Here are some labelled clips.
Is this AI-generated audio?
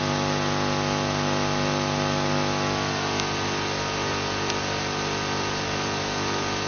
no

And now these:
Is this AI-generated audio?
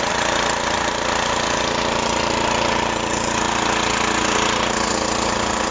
no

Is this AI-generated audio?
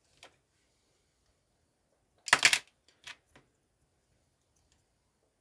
no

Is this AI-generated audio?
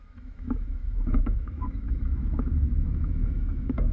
yes